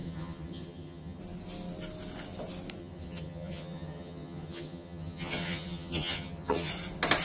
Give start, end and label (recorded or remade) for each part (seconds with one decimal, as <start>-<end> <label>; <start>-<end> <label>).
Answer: 0.0-1.2 remade; 1.2-2.8 recorded; 2.8-6.7 remade; 6.7-7.2 recorded